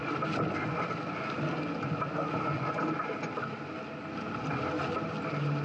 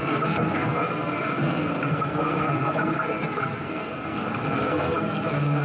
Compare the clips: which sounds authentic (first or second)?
first